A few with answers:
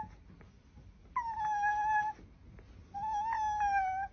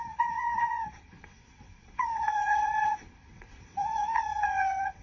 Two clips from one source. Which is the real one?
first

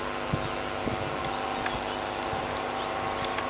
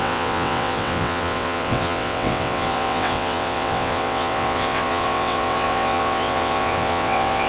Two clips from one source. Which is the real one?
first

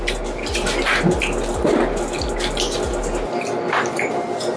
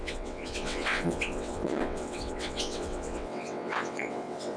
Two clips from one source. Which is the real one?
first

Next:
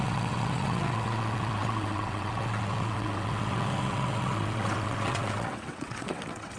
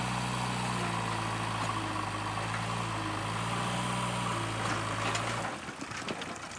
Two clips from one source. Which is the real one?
second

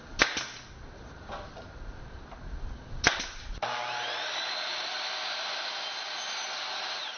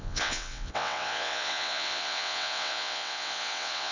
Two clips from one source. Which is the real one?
first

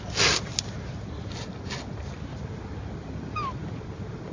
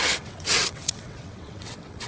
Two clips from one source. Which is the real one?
first